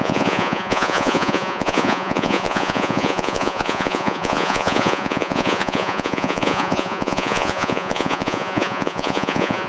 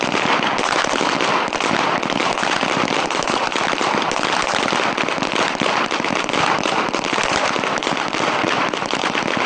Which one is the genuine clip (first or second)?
second